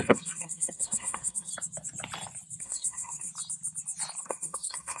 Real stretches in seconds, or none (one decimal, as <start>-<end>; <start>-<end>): 1.5-2.6; 3.3-4.2